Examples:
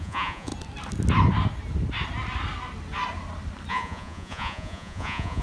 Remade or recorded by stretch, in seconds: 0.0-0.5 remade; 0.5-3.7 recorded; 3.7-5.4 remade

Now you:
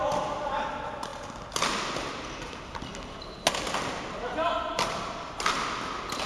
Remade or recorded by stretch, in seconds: 0.0-6.3 recorded

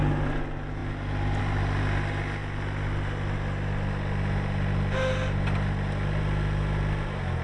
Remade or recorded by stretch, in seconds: 0.0-7.4 recorded

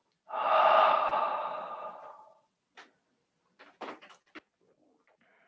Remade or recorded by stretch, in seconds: 0.0-5.5 recorded

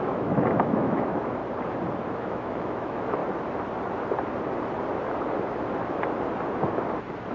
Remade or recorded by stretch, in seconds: 0.0-1.4 remade; 1.4-2.1 recorded; 2.1-3.2 remade; 3.2-7.3 recorded